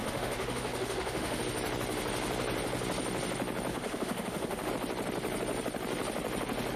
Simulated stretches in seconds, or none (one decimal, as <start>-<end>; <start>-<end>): 0.0-1.4; 3.7-4.7